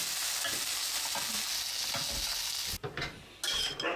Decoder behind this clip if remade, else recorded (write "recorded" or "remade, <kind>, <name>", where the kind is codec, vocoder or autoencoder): recorded